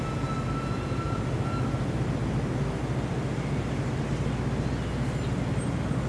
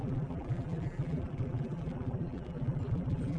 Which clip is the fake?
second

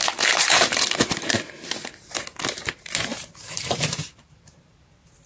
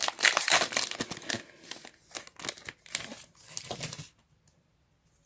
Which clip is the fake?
first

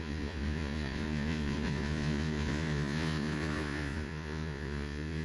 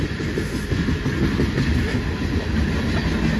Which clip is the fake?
first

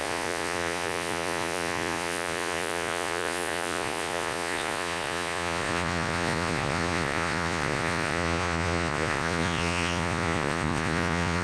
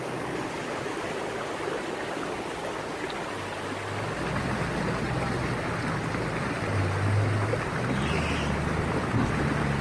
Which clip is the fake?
first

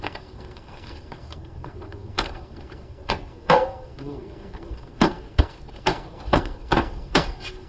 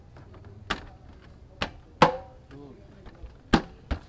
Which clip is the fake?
first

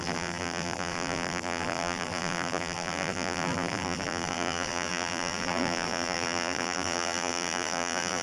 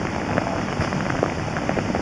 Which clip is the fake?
first